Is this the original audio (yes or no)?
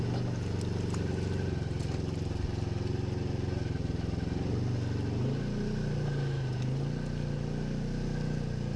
yes